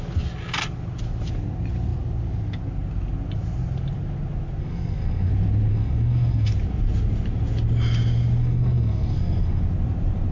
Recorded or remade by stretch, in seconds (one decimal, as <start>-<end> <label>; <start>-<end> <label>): 0.0-4.6 recorded; 4.6-5.3 remade; 5.3-5.7 recorded; 5.7-6.5 remade; 6.5-8.4 recorded; 8.4-9.6 remade; 9.6-10.3 recorded

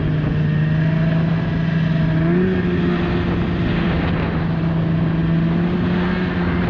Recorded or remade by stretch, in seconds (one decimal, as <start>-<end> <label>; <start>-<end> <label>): 0.0-6.7 recorded

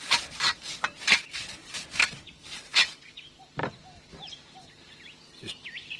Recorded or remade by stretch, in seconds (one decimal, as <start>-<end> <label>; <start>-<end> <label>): 0.0-1.6 remade; 1.6-2.4 recorded; 2.4-3.6 remade; 3.6-4.1 recorded; 4.1-6.0 remade